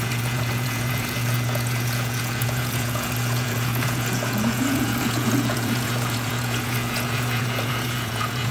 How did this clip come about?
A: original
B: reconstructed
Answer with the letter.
B